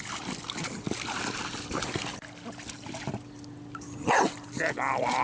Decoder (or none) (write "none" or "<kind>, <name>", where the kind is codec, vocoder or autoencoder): none